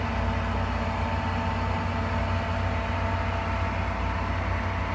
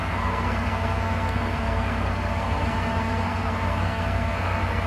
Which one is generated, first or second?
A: second